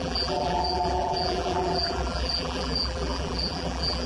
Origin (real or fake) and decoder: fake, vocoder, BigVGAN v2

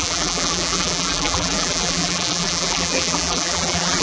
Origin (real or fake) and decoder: fake, vocoder, BigVGAN v2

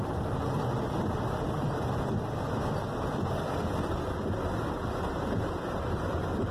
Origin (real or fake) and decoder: real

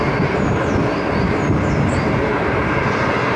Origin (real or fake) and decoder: fake, vocoder, BigVGAN v2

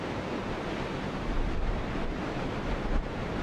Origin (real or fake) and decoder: fake, vocoder, BigVGAN v2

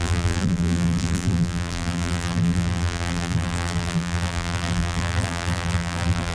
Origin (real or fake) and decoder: fake, vocoder, BigVGAN v2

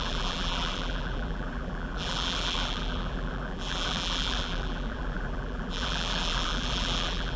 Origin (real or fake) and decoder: fake, vocoder, BigVGAN v2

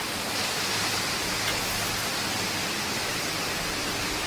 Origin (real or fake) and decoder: real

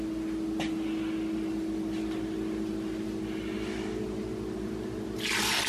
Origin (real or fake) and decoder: real